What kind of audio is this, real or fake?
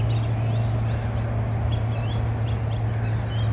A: real